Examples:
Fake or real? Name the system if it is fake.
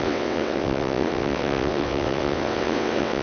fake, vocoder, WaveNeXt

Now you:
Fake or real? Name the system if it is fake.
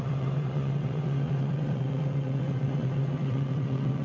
fake, vocoder, WaveNeXt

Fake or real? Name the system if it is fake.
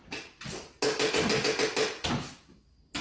real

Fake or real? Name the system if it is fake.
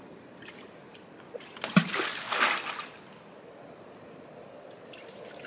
real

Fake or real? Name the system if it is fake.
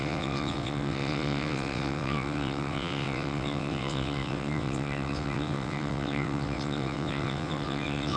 fake, vocoder, WaveNeXt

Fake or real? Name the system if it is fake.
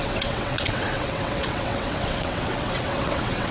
fake, vocoder, WaveNeXt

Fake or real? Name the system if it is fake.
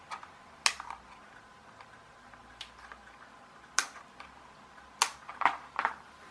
real